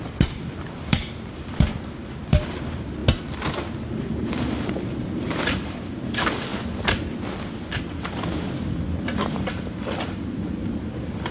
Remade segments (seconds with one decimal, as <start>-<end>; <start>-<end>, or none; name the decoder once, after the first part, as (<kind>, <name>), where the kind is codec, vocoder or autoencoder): 0.0-3.0 (vocoder, BigVGAN v2); 4.0-6.5; 7.5-11.3